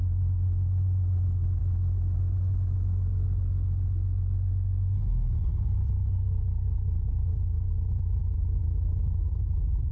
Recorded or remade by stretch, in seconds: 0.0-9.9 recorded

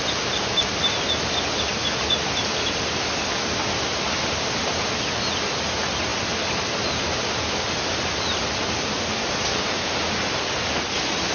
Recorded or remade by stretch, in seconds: 0.0-11.3 recorded

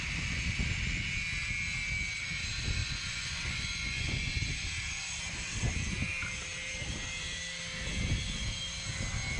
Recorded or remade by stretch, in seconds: 0.0-2.8 recorded; 2.8-4.3 remade; 4.3-9.4 recorded

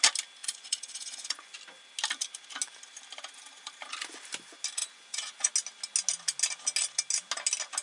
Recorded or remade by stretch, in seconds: 0.0-0.4 recorded; 0.4-1.5 remade; 1.5-4.8 recorded; 4.8-5.5 remade; 5.5-7.8 recorded

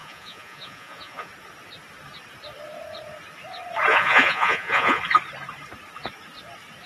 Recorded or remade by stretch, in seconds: 0.0-1.3 remade; 1.3-3.9 recorded; 3.9-5.0 remade; 5.0-6.9 recorded

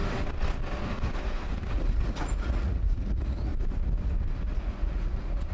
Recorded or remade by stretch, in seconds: 0.0-1.2 recorded; 1.2-3.5 remade; 3.5-4.4 recorded; 4.4-5.5 remade

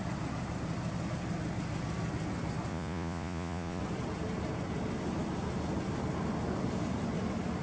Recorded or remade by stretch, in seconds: 0.0-2.7 recorded; 2.7-3.8 remade; 3.8-7.6 recorded